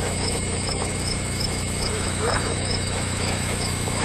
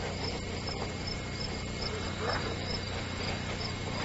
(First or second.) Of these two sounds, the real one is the second